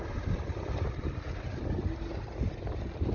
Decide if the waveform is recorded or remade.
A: recorded